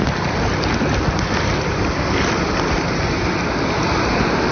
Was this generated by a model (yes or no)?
no